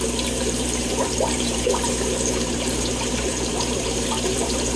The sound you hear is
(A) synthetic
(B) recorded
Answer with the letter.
A